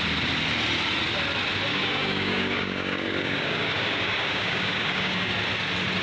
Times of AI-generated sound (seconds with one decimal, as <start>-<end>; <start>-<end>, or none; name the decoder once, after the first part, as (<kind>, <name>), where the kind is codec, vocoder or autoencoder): 1.7-5.3 (codec, DAC)

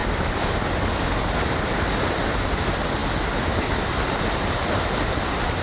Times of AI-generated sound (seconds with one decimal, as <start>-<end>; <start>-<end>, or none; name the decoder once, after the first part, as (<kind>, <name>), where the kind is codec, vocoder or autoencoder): none

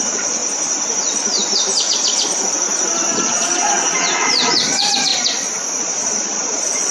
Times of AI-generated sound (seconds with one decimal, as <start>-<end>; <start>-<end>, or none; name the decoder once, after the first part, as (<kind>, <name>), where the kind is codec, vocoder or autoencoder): 0.0-0.4 (vocoder, Vocos); 3.2-5.1; 5.8-6.9

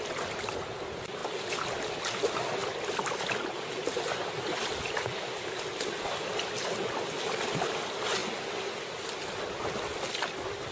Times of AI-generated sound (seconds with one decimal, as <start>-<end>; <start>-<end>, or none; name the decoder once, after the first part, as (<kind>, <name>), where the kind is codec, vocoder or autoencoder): none

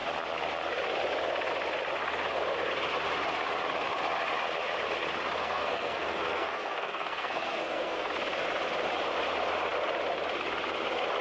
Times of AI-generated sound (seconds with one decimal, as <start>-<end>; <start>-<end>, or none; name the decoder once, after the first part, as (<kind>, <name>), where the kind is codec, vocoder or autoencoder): 5.4-8.1 (codec, SNAC)